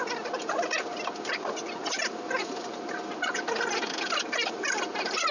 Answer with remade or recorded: recorded